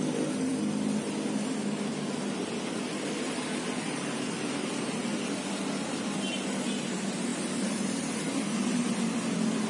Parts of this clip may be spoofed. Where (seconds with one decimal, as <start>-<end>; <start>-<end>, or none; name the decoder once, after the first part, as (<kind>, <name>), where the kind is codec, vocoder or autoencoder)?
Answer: none